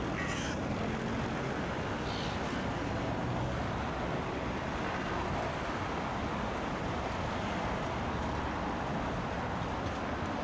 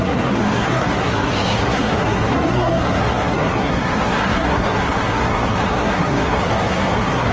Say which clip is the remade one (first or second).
second